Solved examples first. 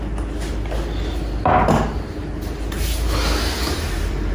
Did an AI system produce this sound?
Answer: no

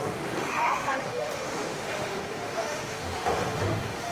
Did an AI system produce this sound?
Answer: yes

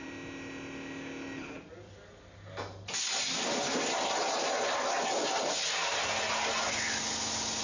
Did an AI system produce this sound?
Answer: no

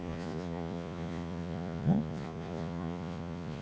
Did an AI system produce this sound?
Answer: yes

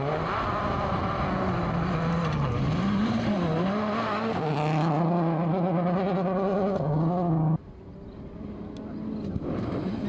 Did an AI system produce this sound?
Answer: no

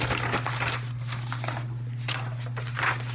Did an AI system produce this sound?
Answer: no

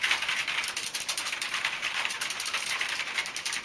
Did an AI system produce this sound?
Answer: yes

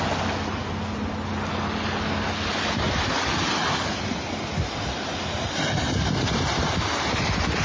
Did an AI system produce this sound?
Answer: no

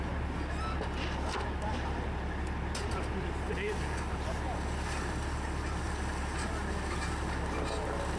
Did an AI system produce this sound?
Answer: no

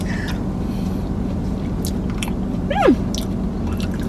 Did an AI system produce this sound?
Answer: no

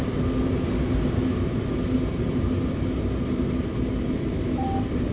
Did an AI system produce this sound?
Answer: no